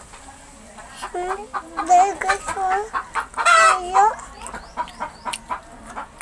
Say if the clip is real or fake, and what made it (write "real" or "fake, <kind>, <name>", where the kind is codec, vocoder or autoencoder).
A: real